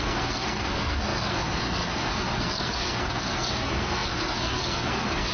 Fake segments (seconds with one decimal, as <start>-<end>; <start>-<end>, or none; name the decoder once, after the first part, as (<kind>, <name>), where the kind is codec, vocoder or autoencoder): 0.0-5.3 (codec, SNAC)